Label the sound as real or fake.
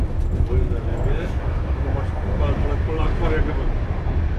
real